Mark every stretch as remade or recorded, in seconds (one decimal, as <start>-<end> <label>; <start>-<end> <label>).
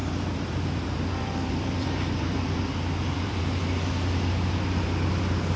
0.0-3.4 remade; 3.4-5.6 recorded